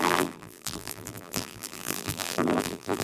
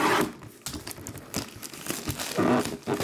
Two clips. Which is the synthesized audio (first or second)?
first